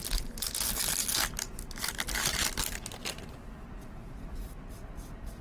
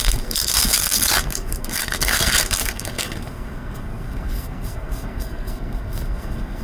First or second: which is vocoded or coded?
second